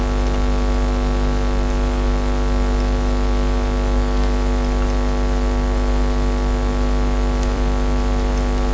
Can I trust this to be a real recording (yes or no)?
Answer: no